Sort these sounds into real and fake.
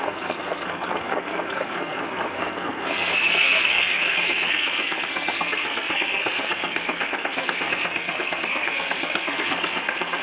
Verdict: fake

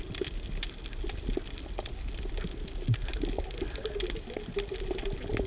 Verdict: real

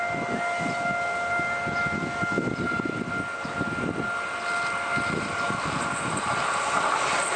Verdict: real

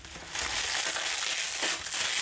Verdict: real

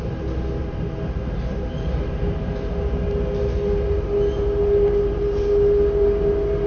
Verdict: real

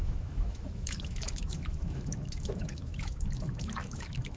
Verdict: fake